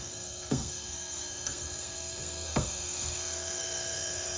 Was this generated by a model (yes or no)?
yes